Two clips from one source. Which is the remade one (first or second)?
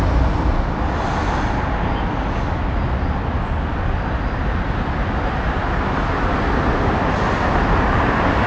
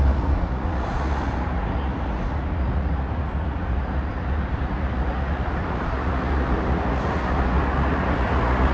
second